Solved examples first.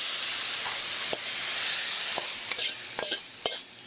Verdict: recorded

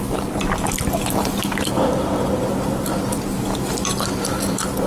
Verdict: recorded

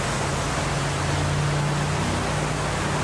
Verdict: recorded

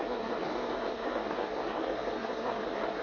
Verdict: remade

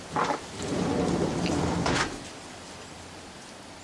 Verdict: recorded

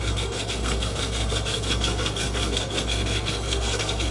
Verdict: remade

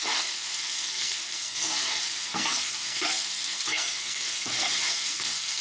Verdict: remade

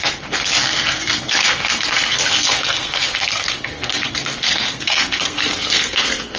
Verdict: remade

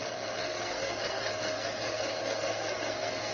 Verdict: remade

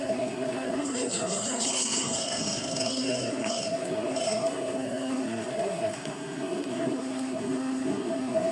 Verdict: remade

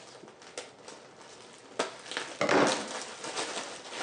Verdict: recorded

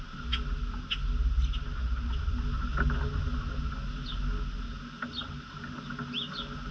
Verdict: recorded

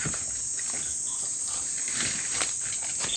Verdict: recorded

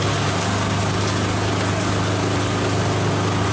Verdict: recorded